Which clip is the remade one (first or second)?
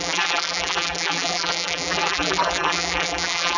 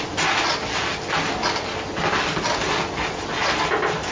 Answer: first